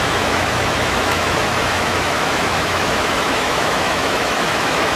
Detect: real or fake fake